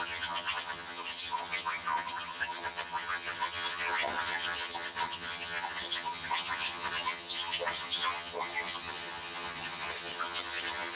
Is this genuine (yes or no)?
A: no